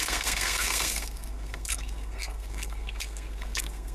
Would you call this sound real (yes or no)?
no